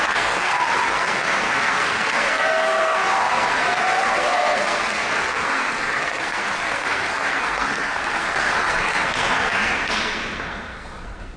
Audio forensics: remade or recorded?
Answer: remade